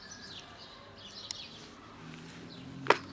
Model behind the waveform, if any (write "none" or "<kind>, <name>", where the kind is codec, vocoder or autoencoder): none